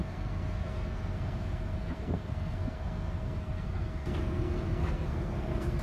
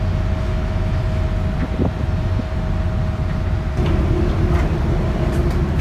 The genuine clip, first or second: second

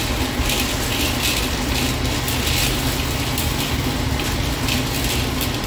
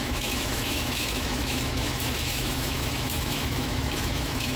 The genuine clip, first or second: first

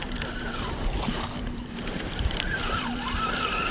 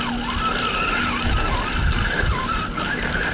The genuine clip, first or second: second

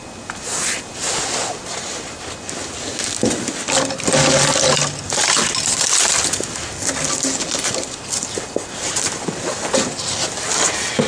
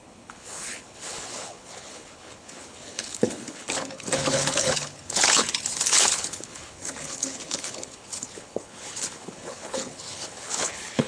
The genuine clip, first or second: first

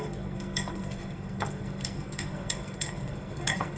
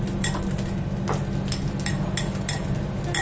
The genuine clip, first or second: second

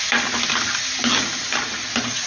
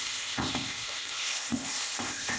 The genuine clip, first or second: first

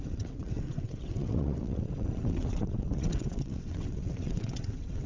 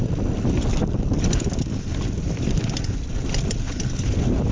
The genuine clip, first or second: second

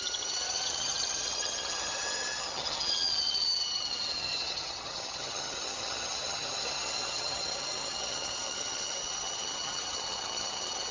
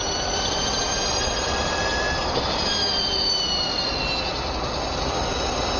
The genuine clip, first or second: second